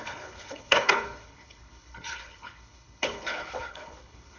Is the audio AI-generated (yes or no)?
yes